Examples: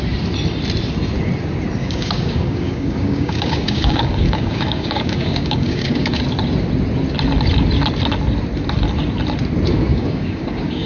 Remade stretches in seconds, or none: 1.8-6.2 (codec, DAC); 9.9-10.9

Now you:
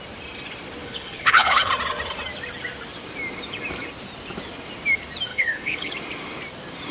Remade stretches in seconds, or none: 0.8-1.7 (codec, HILCodec); 5.3-5.9

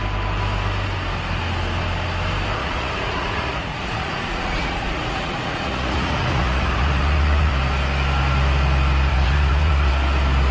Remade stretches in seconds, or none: 2.6-7.5 (vocoder, Vocos); 9.1-9.9

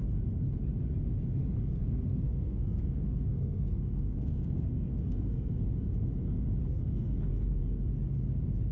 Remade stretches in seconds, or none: 1.7-5.5 (codec, SNAC); 6.7-7.6

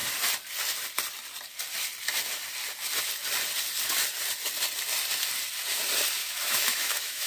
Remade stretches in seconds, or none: 6.2-7.3 (autoencoder, DAC-VAE)